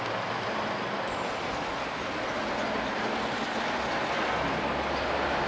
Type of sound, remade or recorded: recorded